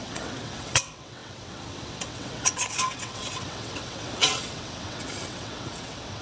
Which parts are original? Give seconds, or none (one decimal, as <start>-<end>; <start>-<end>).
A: none